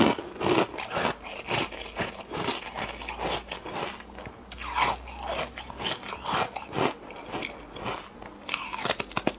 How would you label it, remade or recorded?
recorded